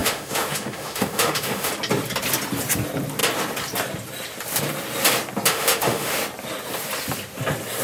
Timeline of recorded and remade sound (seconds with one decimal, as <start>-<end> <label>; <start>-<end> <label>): 0.0-1.7 remade; 1.7-5.5 recorded; 5.5-6.2 remade; 6.2-7.8 recorded